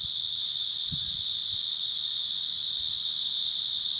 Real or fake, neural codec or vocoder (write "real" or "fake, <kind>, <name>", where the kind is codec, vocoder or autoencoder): fake, vocoder, BigVGAN v2